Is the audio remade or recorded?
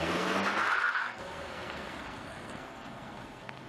remade